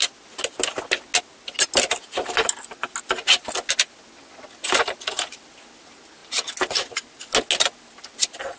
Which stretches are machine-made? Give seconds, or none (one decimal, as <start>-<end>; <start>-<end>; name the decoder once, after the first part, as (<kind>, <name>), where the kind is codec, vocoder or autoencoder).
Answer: none